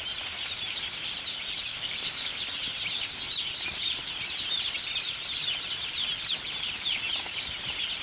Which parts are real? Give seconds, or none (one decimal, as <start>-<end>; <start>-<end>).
0.0-1.7; 2.4-8.0